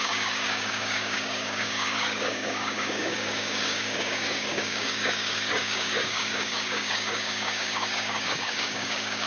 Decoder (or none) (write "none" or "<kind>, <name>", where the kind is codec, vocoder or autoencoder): codec, DAC